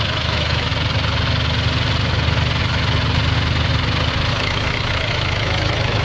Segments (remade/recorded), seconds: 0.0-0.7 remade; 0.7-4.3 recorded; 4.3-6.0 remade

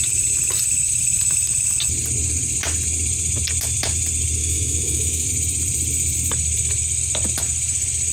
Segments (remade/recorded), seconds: 0.0-4.4 recorded; 4.4-5.3 remade; 5.3-8.1 recorded

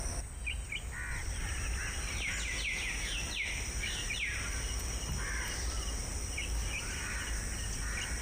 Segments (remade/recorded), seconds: 0.0-8.2 recorded

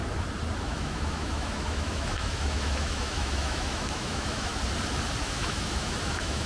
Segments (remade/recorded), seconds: 0.0-0.6 recorded; 0.6-4.5 remade; 4.5-5.2 recorded; 5.2-6.5 remade

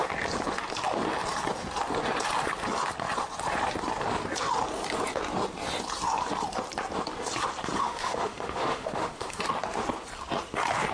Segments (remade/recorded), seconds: 0.0-7.8 recorded; 7.8-9.4 remade; 9.4-10.9 recorded

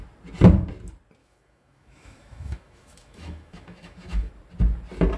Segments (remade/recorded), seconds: 0.0-1.2 recorded; 1.2-4.3 remade; 4.3-5.2 recorded